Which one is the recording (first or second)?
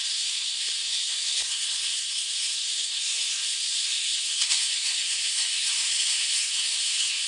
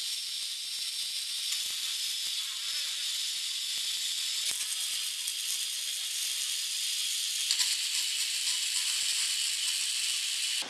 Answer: second